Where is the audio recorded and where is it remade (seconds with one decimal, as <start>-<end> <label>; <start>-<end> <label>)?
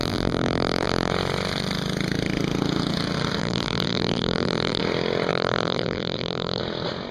0.0-1.1 remade; 1.1-3.4 recorded; 3.4-4.8 remade; 4.8-5.3 recorded; 5.3-6.6 remade; 6.6-7.1 recorded